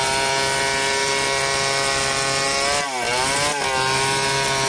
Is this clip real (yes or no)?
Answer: yes